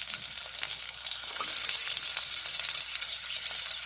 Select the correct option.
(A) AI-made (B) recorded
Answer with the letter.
B